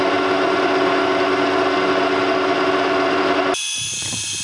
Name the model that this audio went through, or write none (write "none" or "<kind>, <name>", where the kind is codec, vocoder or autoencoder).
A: none